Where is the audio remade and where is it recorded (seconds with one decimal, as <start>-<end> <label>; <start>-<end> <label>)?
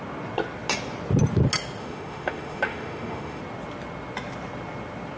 0.0-1.8 recorded; 1.8-3.4 remade; 3.4-5.2 recorded